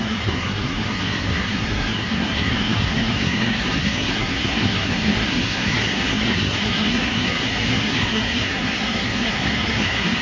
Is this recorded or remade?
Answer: remade